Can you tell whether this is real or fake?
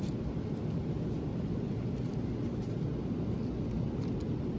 real